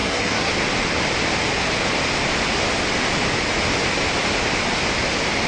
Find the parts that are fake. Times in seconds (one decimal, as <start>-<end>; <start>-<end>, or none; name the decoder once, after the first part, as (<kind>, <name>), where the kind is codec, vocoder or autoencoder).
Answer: 0.0-0.5 (codec, SNAC)